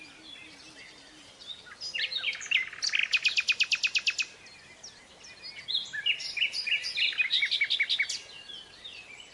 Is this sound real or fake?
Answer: real